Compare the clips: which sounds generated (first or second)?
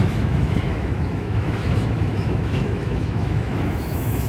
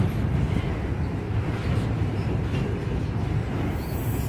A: first